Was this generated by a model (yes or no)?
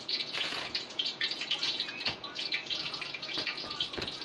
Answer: yes